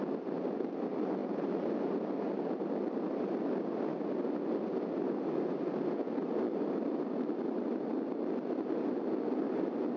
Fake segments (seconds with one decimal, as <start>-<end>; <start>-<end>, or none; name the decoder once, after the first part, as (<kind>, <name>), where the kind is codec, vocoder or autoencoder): none